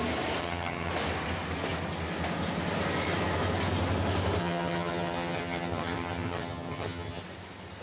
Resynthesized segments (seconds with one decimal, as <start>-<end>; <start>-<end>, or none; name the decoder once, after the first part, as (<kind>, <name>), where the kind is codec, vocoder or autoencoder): 0.4-0.9 (vocoder, HiFi-GAN); 4.4-7.2